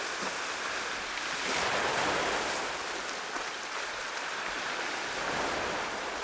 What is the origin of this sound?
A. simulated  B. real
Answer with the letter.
B